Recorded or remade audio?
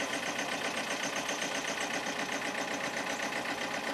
recorded